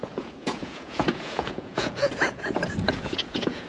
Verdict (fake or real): fake